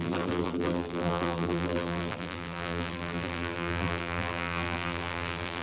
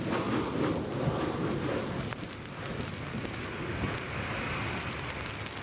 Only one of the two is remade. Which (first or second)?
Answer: first